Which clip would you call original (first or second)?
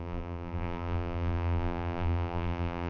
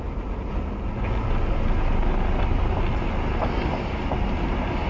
second